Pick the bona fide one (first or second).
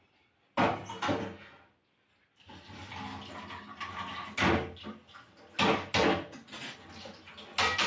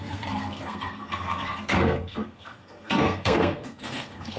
first